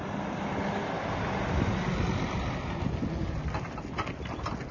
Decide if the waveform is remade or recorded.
recorded